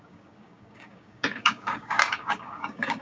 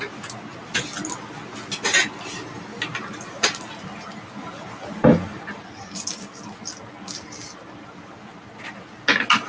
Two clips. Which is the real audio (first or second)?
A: second